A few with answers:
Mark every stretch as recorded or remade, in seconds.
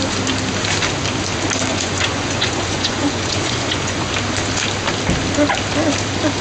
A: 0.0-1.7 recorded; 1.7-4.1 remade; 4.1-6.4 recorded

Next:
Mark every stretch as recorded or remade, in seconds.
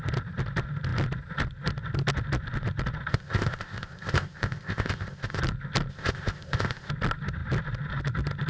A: 0.0-3.1 recorded; 3.1-5.4 remade; 5.4-5.9 recorded; 5.9-6.9 remade; 6.9-8.5 recorded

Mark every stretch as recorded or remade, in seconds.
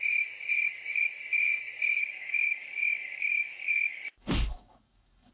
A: 0.0-2.0 recorded; 2.0-5.3 remade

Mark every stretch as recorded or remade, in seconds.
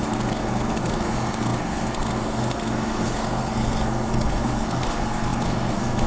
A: 0.0-6.1 remade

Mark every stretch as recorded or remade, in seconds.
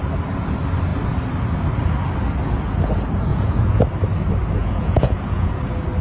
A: 0.0-3.3 recorded; 3.3-3.8 remade; 3.8-4.6 recorded; 4.6-5.5 remade; 5.5-6.0 recorded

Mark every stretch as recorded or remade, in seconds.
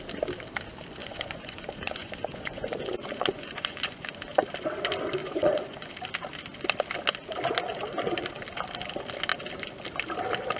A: 0.0-1.0 recorded; 1.0-4.1 remade; 4.1-5.2 recorded; 5.2-5.9 remade; 5.9-10.6 recorded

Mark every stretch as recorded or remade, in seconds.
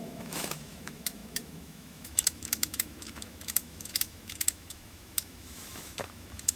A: 0.0-6.6 remade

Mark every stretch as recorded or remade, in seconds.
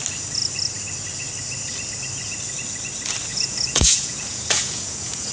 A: 0.0-3.3 recorded; 3.3-5.3 remade